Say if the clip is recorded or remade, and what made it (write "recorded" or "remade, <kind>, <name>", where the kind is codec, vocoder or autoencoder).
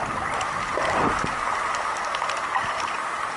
recorded